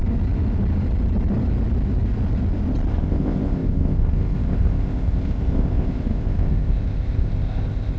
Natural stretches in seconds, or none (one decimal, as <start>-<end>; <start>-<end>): 0.0-2.9